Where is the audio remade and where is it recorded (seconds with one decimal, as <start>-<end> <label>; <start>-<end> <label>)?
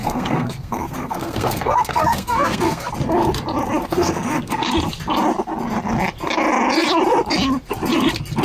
0.0-2.9 remade; 2.9-3.8 recorded; 3.8-4.7 remade; 4.7-8.4 recorded